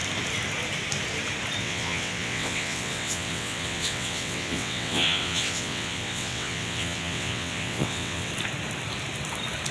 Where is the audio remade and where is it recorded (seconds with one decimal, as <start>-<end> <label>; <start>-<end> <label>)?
0.0-1.6 recorded; 1.6-8.3 remade; 8.3-9.7 recorded